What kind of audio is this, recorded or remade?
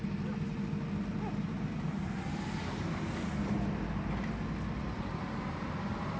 recorded